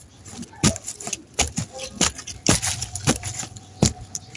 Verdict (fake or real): real